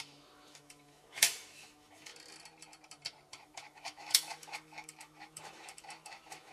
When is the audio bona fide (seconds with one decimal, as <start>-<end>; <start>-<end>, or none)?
2.1-3.3